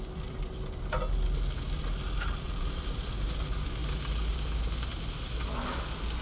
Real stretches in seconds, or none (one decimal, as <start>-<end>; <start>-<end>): 0.0-6.2